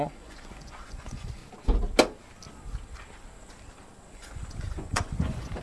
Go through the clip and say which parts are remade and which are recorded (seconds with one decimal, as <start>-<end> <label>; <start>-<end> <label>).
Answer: 0.0-1.4 remade; 1.4-4.1 recorded; 4.1-5.6 remade